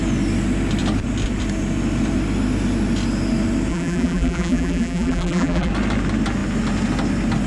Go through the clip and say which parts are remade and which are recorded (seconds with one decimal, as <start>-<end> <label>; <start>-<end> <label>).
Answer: 0.0-3.7 recorded; 3.7-5.7 remade; 5.7-7.5 recorded